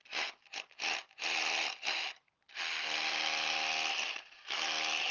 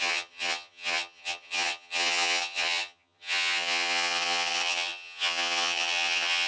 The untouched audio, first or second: first